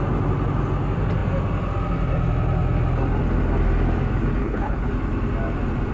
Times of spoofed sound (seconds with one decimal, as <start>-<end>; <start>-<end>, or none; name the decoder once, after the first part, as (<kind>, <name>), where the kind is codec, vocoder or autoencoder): 4.4-4.9 (codec, HILCodec)